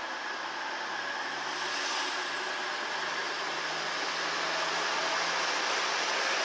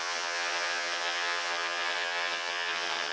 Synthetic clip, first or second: second